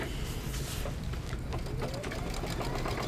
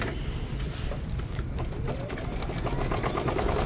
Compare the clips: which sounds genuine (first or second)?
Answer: first